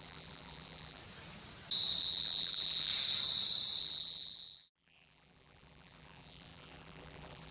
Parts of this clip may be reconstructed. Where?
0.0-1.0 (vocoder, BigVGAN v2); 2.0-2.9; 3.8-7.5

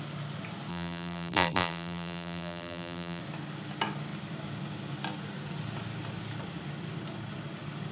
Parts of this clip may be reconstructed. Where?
0.7-3.2 (vocoder, BigVGAN v2)